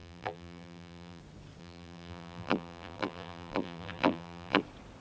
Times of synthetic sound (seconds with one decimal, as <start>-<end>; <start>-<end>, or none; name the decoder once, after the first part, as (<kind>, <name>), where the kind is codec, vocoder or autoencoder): 0.0-1.2 (vocoder, BigVGAN v2); 1.6-4.6